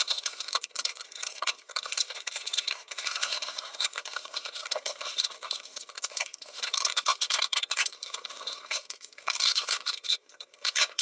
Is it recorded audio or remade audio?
remade